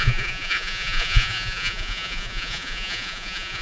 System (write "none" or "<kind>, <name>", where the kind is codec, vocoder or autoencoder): vocoder, Vocos